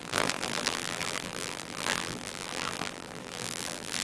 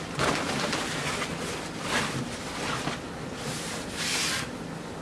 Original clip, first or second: second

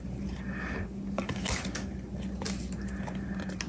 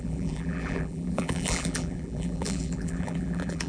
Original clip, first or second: first